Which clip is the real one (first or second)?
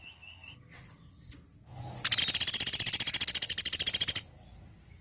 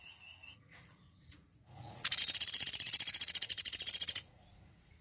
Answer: first